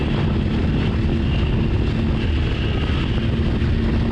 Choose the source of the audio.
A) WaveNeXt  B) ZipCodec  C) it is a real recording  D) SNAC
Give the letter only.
C